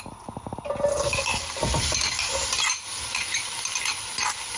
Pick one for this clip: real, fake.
real